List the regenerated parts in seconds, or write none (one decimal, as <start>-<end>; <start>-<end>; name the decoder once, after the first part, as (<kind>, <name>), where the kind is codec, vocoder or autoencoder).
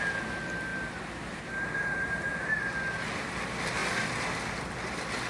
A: 0.7-2.6 (vocoder, BigVGAN v2)